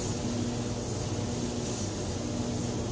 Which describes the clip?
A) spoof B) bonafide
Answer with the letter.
B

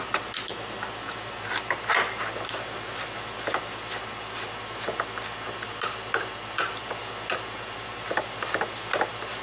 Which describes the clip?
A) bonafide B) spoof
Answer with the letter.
A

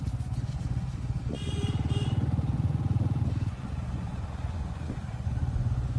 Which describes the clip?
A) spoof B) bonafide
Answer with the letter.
A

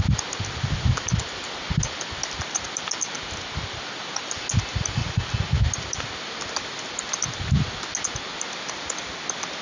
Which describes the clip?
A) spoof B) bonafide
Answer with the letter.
B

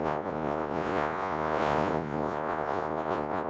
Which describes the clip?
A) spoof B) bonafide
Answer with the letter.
A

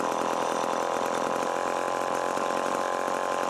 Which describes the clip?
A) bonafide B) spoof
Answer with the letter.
A